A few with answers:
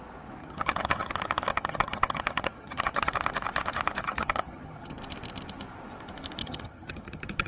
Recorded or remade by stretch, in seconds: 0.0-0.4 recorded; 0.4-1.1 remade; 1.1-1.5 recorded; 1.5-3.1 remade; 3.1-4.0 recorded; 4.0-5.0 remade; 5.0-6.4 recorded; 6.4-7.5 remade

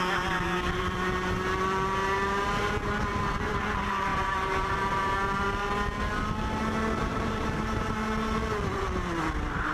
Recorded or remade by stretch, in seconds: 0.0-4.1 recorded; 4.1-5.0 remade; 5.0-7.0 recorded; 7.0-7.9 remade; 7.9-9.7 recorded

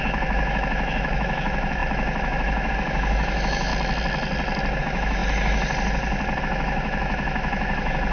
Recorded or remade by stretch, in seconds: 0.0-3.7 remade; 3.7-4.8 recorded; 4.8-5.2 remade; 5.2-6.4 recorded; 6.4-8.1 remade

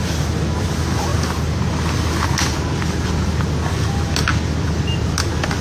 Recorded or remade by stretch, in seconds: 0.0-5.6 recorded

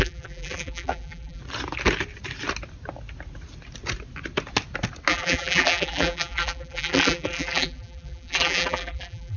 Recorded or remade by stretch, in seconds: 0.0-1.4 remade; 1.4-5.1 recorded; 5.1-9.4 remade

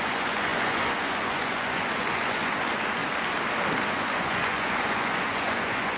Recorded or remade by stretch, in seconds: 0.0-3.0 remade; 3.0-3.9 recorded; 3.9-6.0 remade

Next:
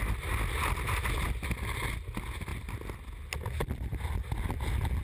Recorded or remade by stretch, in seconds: 0.0-5.0 recorded